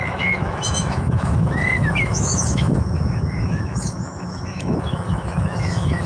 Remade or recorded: remade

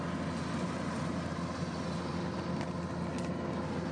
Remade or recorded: recorded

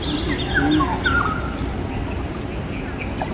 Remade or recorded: recorded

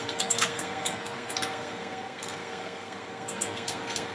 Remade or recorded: remade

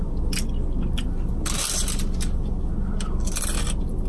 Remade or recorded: recorded